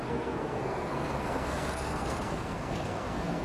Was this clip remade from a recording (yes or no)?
yes